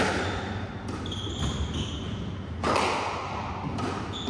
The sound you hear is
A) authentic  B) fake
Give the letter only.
A